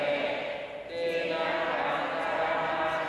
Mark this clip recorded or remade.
recorded